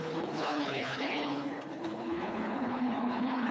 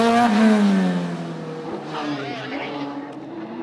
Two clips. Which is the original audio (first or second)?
second